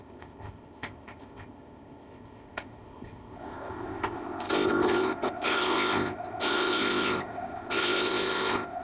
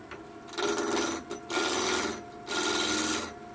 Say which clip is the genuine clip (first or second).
second